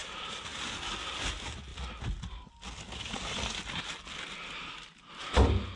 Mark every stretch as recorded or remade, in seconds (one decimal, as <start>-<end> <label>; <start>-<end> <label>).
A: 0.0-0.6 remade; 0.6-5.8 recorded